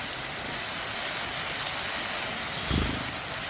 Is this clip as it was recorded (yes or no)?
yes